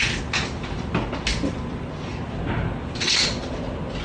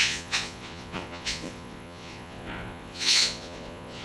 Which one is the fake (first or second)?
second